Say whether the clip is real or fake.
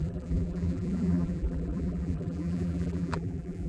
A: fake